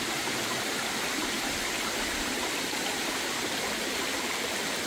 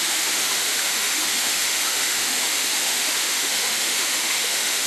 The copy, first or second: second